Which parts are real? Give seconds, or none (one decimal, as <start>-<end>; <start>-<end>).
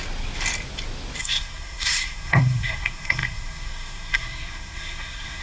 0.0-1.2